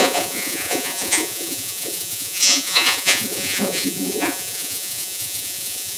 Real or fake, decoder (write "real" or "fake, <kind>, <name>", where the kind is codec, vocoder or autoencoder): fake, vocoder, Vocos